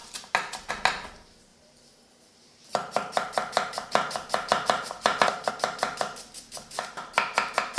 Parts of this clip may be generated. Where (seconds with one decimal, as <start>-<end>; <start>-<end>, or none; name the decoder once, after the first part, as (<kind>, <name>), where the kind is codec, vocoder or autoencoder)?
1.5-5.5 (vocoder, BigVGAN v2)